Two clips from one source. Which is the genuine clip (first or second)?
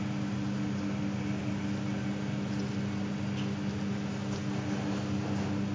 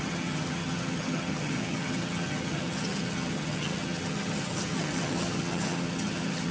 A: first